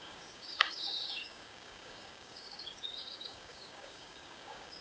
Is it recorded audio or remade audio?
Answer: remade